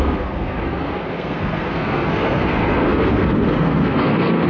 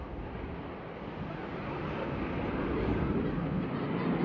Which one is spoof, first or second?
first